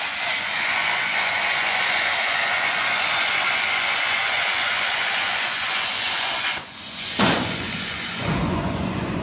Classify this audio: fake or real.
fake